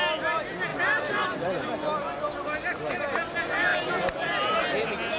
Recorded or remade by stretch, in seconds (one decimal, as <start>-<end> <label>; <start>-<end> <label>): 0.0-5.2 recorded